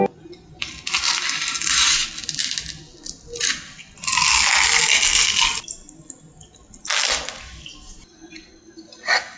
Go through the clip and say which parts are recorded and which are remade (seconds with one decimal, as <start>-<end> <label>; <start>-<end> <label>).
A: 0.0-9.4 recorded